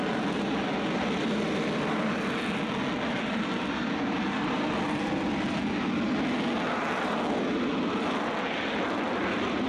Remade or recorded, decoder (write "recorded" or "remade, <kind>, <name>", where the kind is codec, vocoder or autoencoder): recorded